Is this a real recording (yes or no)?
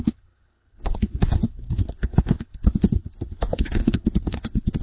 no